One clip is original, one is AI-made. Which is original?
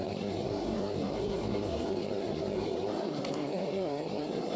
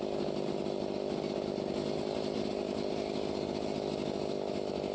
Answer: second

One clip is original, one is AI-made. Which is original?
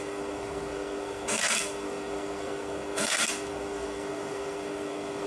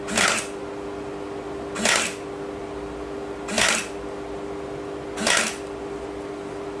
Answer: second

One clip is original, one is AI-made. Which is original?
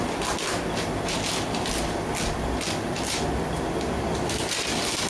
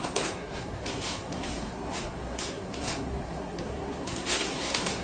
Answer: first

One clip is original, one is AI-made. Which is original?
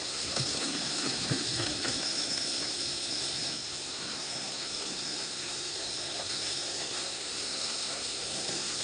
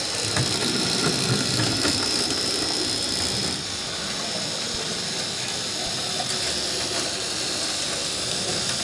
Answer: second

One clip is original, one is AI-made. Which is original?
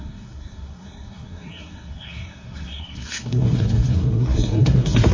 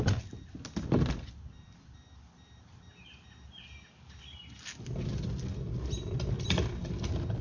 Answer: second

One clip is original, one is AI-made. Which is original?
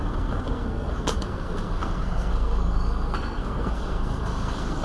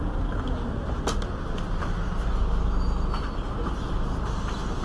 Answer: second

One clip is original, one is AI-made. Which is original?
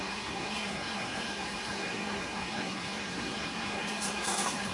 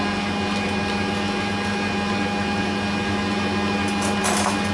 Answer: second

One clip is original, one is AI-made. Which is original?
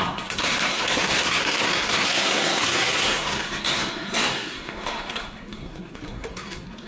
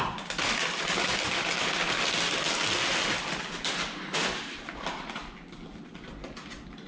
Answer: second